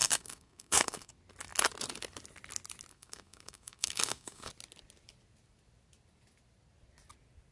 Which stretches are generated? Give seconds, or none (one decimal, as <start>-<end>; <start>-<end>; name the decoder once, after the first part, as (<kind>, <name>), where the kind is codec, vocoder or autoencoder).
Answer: 0.0-1.1 (codec, SNAC); 2.9-4.5